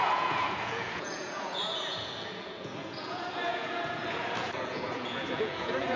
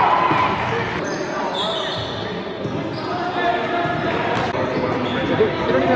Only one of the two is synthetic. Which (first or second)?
first